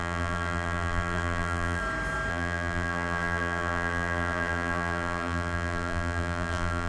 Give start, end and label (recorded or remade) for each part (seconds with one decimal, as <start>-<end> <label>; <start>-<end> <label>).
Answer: 0.0-1.8 remade; 1.8-2.3 recorded; 2.3-6.9 remade